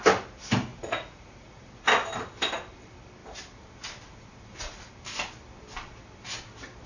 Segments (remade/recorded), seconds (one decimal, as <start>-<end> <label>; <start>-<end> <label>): 0.0-0.7 recorded; 0.7-1.8 remade; 1.8-6.9 recorded